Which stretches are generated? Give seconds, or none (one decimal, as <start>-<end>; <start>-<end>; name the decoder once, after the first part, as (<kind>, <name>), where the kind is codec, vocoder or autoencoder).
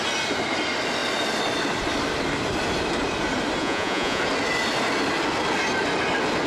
3.6-4.2 (vocoder, Vocos)